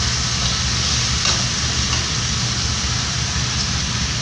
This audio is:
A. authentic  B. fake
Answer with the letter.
A